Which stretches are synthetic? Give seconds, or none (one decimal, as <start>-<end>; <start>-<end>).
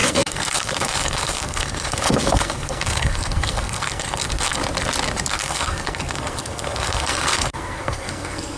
0.0-4.6; 5.3-8.6